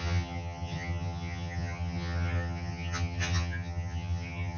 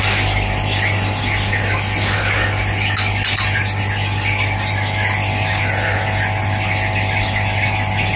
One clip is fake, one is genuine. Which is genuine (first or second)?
second